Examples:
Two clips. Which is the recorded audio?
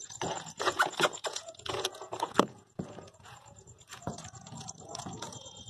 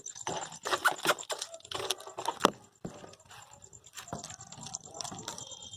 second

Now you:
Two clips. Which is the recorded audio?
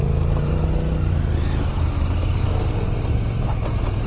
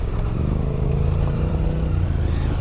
first